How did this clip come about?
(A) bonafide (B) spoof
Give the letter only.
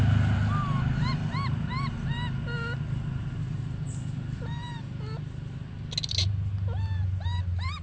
A